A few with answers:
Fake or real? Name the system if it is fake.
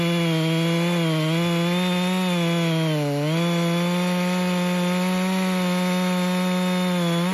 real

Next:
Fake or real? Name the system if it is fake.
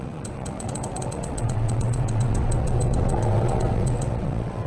fake, vocoder, WaveNeXt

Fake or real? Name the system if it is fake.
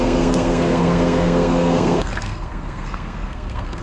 fake, codec, SNAC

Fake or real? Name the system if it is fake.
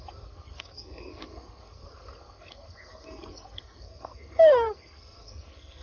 fake, codec, SNAC